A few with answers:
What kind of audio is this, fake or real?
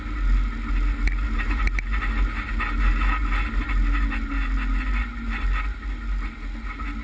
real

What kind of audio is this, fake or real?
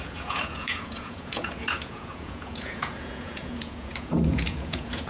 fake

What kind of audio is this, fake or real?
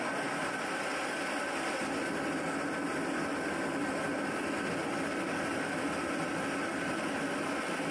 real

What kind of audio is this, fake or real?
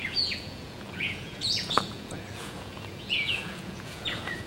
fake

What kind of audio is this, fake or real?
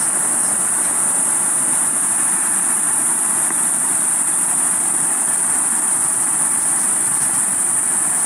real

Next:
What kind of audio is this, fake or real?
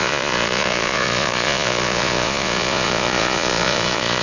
fake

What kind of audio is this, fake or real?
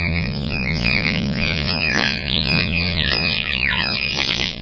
fake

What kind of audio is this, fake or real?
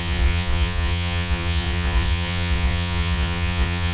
fake